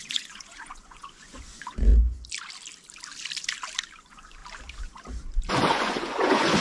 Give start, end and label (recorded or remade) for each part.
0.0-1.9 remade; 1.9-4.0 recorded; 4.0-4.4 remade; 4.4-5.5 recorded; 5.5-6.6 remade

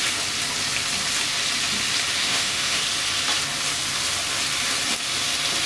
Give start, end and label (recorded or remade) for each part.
0.0-2.2 recorded; 2.2-2.8 remade; 2.8-5.7 recorded

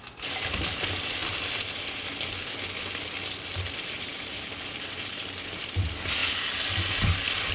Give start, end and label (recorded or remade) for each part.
0.0-7.5 recorded

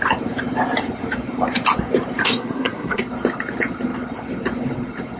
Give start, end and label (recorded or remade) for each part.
0.0-2.2 recorded; 2.2-3.0 remade; 3.0-5.2 recorded

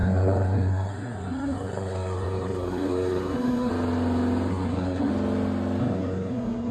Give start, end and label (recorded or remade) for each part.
0.0-3.7 remade; 3.7-4.5 recorded; 4.5-5.1 remade; 5.1-5.8 recorded; 5.8-6.7 remade

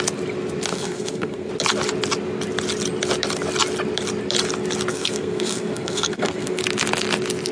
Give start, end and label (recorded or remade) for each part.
0.0-0.7 recorded; 0.7-1.5 remade; 1.5-4.9 recorded; 4.9-6.6 remade; 6.6-7.5 recorded

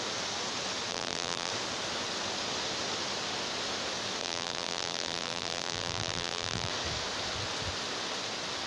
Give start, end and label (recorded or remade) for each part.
0.0-0.9 recorded; 0.9-1.5 remade; 1.5-4.2 recorded; 4.2-6.7 remade; 6.7-8.7 recorded